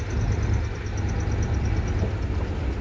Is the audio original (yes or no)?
yes